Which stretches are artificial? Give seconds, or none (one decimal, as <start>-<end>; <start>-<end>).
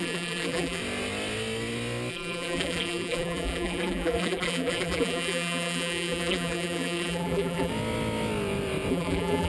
0.0-0.8; 2.1-7.7; 8.9-9.5